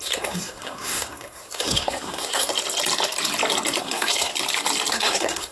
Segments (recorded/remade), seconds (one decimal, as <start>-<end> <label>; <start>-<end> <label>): 0.0-2.5 remade; 2.5-3.8 recorded; 3.8-4.3 remade; 4.3-4.9 recorded; 4.9-5.5 remade